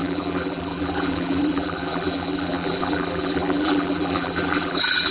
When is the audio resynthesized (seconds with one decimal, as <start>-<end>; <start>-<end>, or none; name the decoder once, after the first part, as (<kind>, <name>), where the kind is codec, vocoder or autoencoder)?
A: 0.0-5.1 (vocoder, BigVGAN v2)